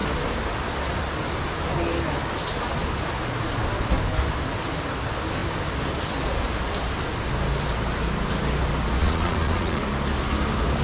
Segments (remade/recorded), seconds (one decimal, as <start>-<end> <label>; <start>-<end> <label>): 0.0-9.0 recorded; 9.0-9.8 remade; 9.8-10.8 recorded